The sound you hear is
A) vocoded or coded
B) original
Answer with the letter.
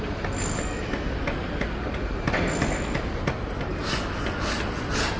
B